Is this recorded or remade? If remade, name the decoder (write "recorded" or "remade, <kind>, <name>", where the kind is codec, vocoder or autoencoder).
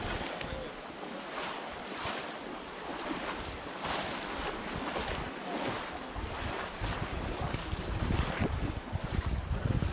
recorded